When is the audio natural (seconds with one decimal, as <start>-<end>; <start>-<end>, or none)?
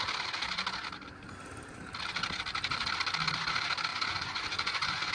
0.0-3.9